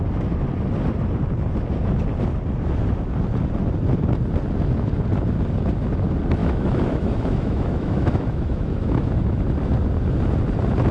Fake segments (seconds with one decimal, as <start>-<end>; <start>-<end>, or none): 6.4-9.4